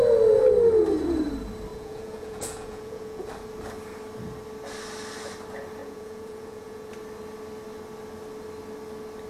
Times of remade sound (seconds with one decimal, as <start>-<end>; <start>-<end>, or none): 1.7-3.3; 5.8-6.9